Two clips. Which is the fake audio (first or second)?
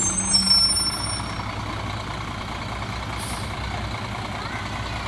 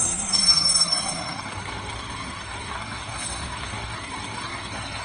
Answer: second